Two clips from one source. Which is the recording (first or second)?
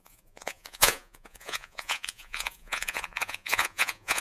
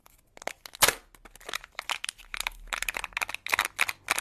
second